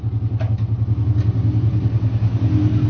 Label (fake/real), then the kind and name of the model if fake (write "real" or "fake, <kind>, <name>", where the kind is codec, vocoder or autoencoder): real